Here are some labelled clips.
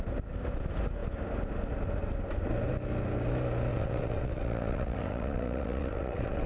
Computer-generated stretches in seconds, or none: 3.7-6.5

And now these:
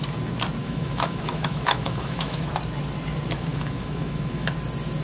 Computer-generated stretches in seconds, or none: 0.6-2.5; 3.5-4.5

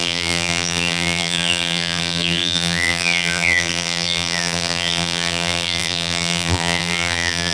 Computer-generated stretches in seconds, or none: 0.0-7.5